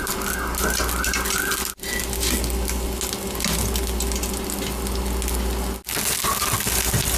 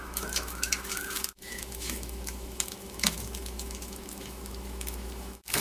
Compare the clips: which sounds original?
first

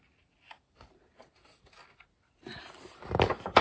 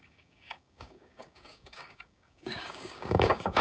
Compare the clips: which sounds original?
first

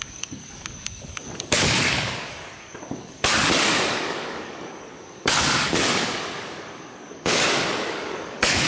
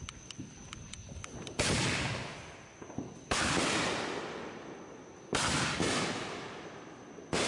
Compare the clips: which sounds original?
second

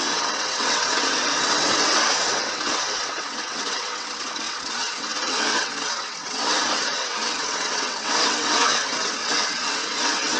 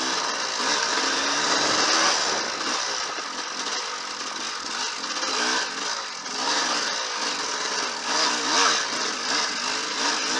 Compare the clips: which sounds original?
second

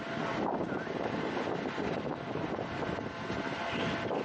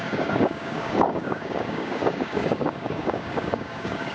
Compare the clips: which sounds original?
first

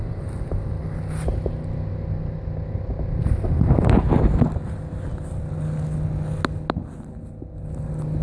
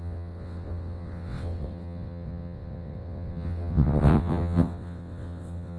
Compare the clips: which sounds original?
first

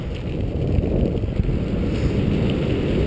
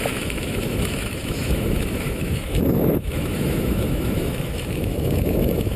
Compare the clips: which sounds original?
first